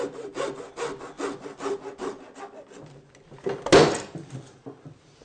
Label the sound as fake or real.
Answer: real